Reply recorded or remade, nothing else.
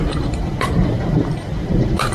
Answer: remade